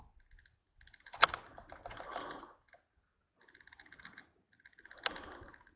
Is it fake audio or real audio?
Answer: real